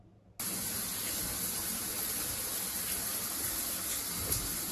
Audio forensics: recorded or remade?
recorded